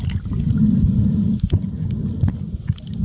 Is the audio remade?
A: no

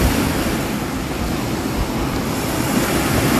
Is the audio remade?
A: no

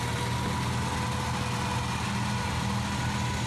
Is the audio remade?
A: no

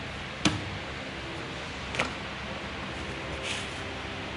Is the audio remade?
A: no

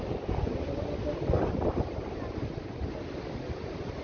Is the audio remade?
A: no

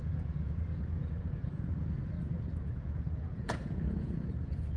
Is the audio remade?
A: yes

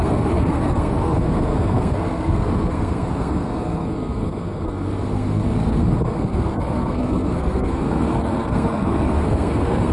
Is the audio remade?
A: yes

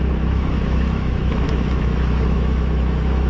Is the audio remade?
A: yes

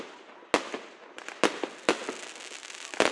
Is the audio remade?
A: no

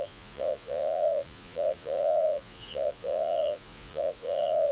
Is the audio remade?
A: yes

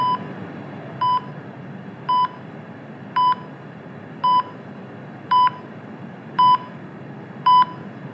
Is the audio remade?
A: no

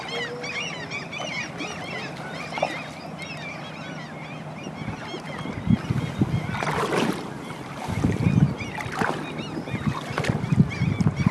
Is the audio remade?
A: no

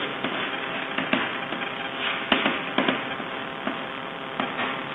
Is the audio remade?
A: no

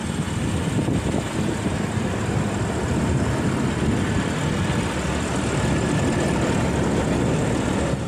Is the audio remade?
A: yes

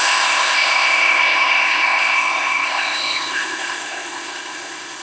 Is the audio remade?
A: yes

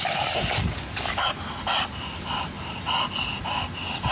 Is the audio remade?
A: no